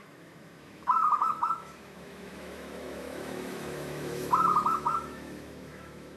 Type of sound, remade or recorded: remade